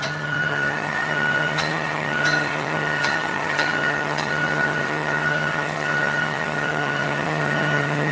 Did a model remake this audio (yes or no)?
yes